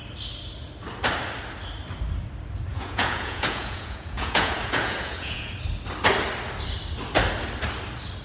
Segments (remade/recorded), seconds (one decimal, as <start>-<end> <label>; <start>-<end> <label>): 0.0-2.7 recorded; 2.7-5.5 remade; 5.5-8.2 recorded